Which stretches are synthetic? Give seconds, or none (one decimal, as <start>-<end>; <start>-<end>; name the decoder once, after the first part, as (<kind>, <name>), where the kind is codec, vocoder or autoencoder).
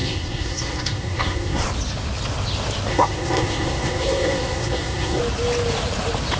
0.0-1.6 (codec, SNAC); 2.9-5.2